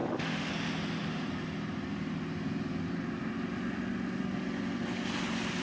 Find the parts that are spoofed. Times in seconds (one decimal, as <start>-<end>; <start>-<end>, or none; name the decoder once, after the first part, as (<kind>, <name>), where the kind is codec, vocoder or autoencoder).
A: 0.0-0.5 (autoencoder, DAC-VAE)